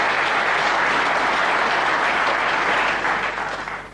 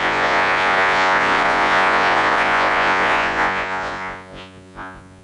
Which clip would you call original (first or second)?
first